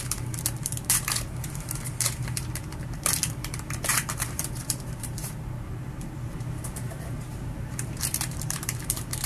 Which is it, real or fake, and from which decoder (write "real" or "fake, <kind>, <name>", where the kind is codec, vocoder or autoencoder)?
fake, vocoder, BigVGAN v2